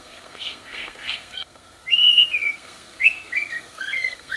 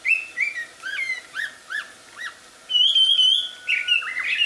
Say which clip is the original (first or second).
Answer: second